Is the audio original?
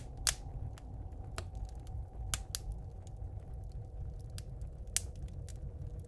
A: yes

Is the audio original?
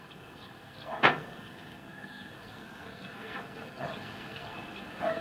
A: no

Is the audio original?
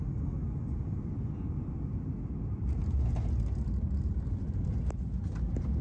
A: yes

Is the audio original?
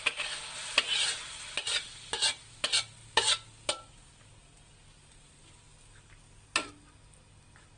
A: yes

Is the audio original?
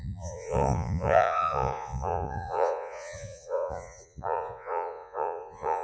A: no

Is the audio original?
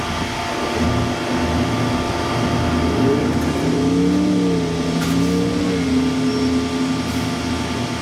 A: yes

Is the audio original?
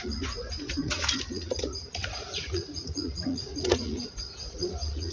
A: no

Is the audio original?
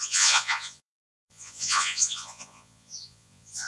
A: no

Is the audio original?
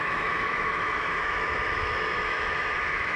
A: no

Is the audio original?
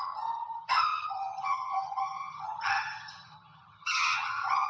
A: no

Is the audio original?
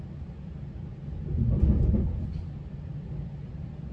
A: yes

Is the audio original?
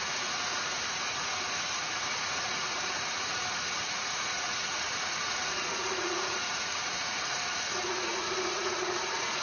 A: no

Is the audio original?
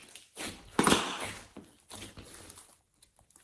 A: yes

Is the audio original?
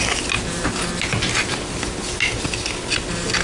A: yes